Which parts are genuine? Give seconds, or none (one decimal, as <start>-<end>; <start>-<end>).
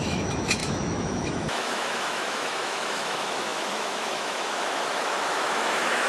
none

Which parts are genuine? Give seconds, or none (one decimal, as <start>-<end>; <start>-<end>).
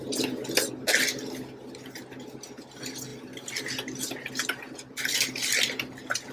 0.0-6.3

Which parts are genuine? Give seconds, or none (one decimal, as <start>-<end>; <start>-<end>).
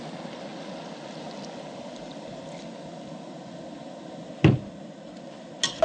0.0-5.8